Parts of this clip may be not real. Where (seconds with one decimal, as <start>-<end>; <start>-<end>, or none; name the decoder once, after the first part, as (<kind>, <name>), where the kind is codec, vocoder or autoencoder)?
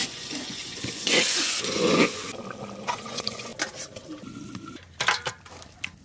0.0-2.2 (vocoder, Vocos); 2.8-3.5